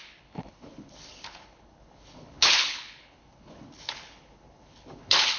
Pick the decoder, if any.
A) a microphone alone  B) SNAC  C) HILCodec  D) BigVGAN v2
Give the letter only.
C